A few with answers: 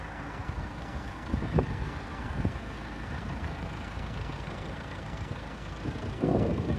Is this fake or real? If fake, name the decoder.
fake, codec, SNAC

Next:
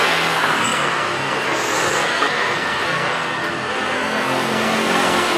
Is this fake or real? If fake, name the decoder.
fake, codec, SNAC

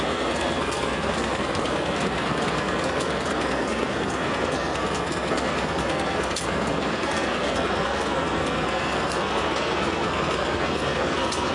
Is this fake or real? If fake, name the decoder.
fake, codec, SNAC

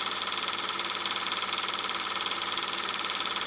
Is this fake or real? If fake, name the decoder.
real